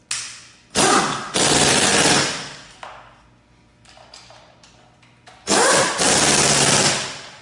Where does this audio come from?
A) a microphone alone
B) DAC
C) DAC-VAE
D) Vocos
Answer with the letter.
A